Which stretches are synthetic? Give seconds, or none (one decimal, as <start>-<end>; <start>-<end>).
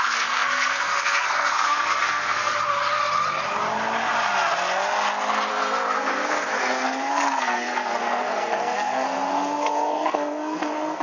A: 0.0-2.5; 5.5-11.0